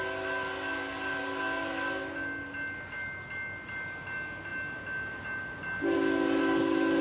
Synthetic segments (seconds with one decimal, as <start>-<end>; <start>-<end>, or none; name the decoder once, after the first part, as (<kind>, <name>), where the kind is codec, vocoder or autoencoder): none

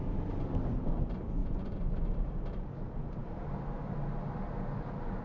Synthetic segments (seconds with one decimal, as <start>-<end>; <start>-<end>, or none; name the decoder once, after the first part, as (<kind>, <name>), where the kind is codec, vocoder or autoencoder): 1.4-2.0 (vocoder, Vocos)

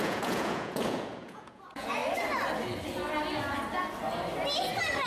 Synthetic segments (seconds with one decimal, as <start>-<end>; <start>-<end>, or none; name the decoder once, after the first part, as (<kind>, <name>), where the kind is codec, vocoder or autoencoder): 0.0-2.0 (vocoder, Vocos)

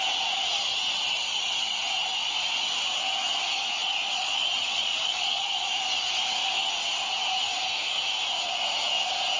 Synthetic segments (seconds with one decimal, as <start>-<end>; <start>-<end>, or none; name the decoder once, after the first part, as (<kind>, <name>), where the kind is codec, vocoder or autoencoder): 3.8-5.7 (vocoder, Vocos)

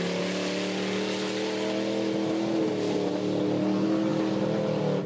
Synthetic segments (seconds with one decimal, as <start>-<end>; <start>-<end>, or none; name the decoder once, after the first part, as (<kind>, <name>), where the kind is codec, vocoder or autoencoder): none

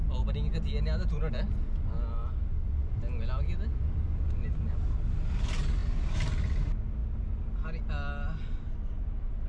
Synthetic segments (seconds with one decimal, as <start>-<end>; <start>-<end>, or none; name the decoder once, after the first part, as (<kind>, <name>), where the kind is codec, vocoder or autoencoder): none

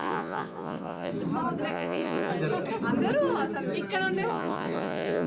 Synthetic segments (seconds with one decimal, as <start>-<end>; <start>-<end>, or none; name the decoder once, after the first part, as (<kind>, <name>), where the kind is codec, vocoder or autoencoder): 0.0-1.1 (vocoder, Vocos); 1.7-2.3; 4.3-5.3

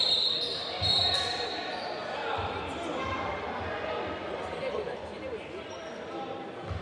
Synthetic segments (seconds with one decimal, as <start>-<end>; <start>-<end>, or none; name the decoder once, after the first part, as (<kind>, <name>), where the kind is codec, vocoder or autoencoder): none